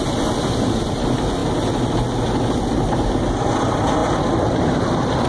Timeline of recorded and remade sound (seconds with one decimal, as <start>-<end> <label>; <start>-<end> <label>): 0.0-5.3 recorded